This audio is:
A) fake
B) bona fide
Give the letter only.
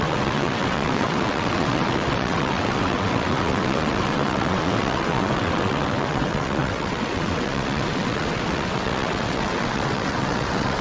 A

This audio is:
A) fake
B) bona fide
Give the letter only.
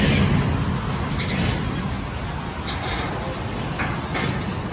B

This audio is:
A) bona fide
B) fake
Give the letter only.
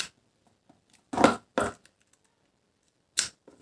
A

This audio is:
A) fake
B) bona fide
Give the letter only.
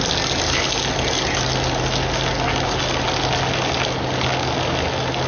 B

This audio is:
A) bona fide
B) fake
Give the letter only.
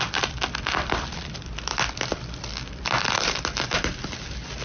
B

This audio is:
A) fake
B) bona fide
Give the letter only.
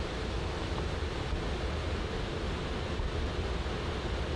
B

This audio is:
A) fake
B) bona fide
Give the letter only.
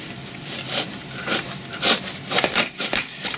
B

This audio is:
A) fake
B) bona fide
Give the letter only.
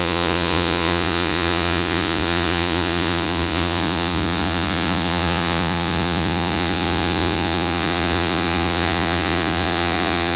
A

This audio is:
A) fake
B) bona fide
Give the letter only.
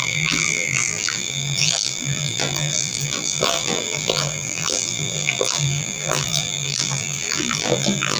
A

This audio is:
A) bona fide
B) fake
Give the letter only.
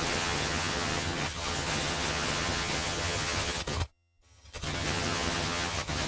B